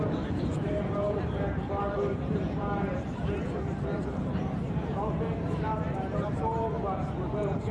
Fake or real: fake